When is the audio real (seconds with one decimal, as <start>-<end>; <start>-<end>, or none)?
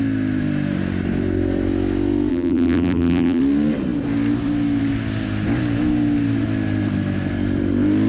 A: 0.0-2.3; 3.4-8.1